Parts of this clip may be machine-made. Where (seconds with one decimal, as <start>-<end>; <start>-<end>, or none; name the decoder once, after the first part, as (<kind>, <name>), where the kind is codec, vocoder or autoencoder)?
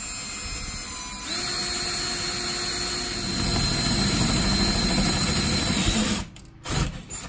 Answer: 3.5-6.4 (vocoder, BigVGAN v2)